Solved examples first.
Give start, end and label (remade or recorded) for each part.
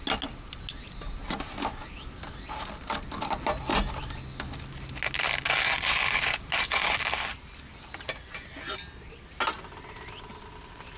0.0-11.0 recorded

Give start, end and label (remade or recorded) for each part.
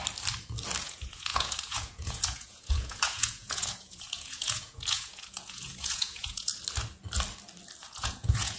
0.0-0.8 recorded; 0.8-6.5 remade; 6.5-7.8 recorded; 7.8-8.6 remade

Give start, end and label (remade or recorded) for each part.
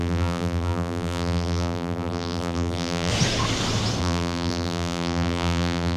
0.0-3.1 remade; 3.1-4.0 recorded; 4.0-6.0 remade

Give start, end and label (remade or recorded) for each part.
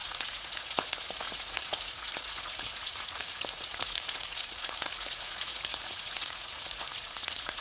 0.0-7.6 remade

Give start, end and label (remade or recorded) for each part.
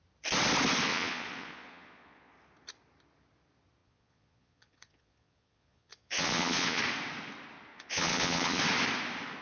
0.0-0.9 recorded; 0.9-2.3 remade; 2.3-3.8 recorded; 3.8-6.8 remade; 6.8-7.7 recorded; 7.7-8.6 remade; 8.6-9.4 recorded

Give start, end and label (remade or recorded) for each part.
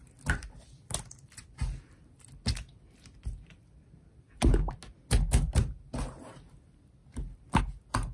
0.0-8.1 recorded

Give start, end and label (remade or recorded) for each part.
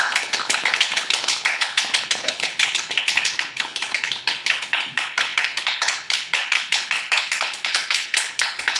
0.0-8.8 remade